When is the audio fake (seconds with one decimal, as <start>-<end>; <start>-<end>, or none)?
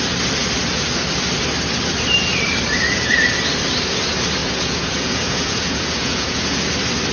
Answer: 4.4-6.6